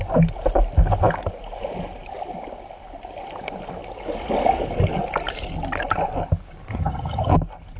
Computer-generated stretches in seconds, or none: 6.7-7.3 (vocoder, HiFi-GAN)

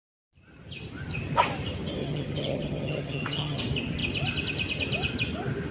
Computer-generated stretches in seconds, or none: 2.0-3.6 (vocoder, HiFi-GAN)

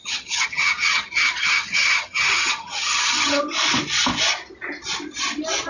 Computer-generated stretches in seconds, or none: 0.0-3.4 (vocoder, HiFi-GAN)

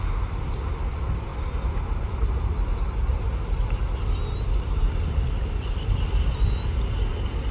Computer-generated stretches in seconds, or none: none

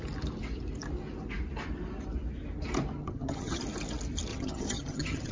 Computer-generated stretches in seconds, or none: 3.0-3.6 (vocoder, HiFi-GAN); 4.3-5.3